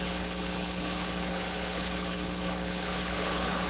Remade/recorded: remade